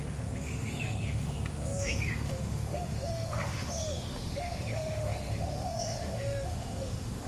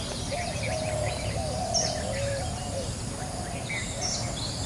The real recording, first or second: second